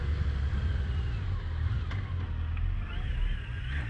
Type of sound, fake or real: real